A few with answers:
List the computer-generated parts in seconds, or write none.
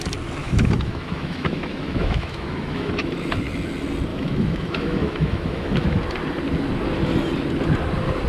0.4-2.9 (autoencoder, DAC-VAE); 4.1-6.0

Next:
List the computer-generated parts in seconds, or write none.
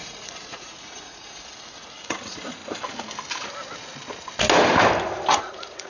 0.0-2.6 (vocoder, Vocos); 5.3-5.9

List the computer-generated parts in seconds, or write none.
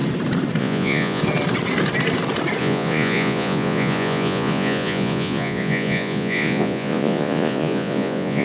0.6-1.2 (vocoder, Vocos); 2.6-8.4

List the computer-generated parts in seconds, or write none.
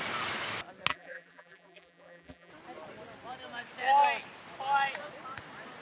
0.9-2.5 (vocoder, BigVGAN v2)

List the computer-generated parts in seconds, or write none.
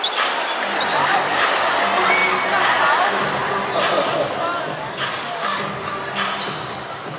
1.0-1.6 (codec, DAC); 4.7-5.7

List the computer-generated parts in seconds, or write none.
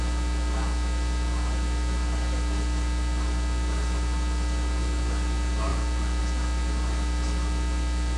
none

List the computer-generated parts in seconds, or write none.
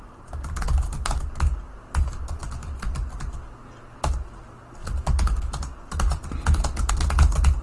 none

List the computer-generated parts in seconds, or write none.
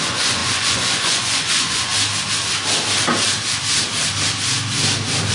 0.0-1.9 (vocoder, Vocos)